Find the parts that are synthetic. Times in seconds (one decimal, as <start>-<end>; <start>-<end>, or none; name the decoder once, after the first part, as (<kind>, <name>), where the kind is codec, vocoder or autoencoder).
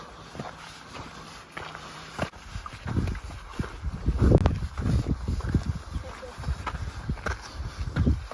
0.0-1.1 (vocoder, BigVGAN v2); 1.9-3.5